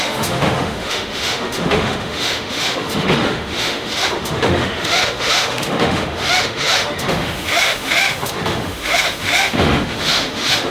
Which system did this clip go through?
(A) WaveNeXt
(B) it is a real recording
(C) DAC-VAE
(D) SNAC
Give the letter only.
C